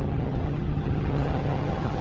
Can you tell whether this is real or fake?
fake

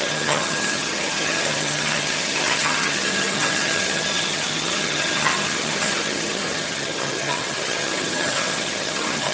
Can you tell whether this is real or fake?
fake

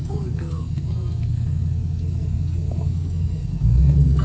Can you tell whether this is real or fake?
fake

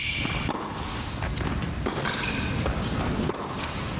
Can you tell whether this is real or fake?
real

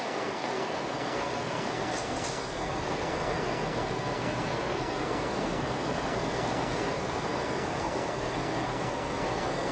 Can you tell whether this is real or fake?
fake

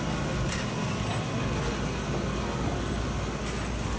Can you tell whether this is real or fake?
real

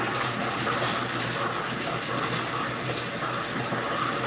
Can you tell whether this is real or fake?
real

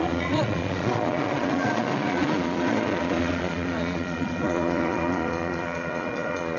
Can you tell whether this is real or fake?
fake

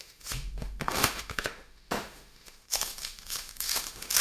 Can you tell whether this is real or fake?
fake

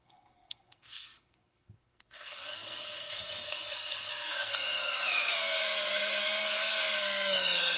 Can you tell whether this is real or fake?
fake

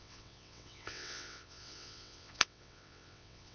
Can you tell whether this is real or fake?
fake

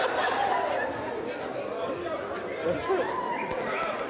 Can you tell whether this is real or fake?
real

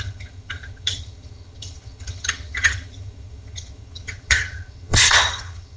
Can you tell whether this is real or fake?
fake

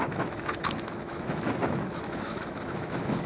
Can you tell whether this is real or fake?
fake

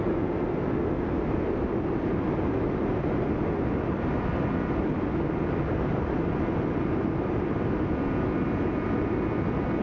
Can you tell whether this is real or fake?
real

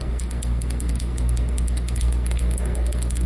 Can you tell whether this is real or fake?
fake